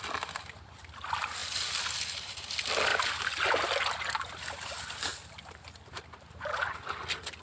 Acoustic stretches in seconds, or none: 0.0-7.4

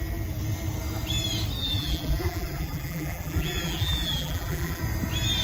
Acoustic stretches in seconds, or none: 0.0-1.6; 4.8-5.4

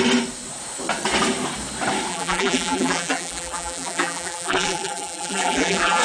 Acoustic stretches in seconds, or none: 0.0-2.1